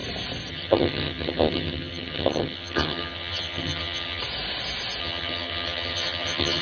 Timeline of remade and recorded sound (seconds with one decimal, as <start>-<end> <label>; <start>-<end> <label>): 0.0-0.5 recorded; 0.5-4.2 remade; 4.2-5.0 recorded; 5.0-6.6 remade